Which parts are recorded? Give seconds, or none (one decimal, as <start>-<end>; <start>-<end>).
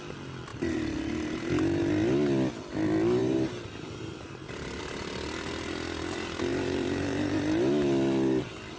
0.0-0.5; 1.0-3.2; 4.8-6.5; 7.4-8.8